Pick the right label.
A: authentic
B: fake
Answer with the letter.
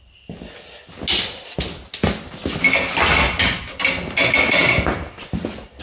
A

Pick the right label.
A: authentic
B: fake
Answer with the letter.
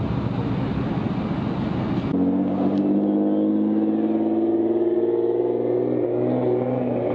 A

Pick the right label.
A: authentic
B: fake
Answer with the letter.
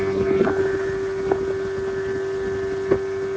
A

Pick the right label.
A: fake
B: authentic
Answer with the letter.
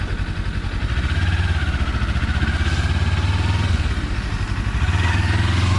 B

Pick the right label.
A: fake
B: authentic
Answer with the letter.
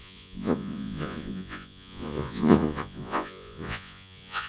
A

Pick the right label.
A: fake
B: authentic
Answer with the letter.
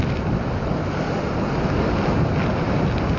B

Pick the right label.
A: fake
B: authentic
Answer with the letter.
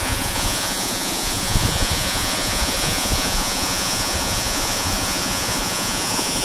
A